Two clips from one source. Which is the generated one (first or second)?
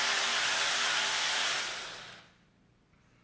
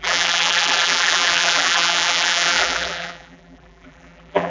second